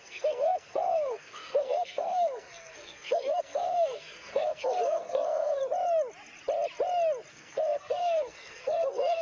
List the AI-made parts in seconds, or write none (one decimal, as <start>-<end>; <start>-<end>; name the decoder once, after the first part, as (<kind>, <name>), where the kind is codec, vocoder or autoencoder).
0.0-5.6 (codec, SNAC); 7.3-9.2